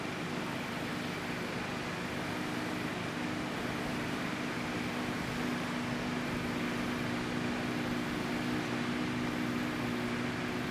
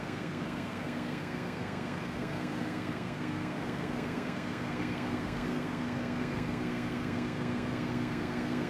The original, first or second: first